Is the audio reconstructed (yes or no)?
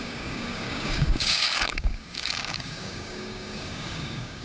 yes